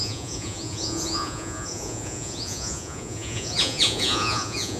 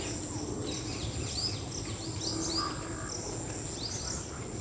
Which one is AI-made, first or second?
first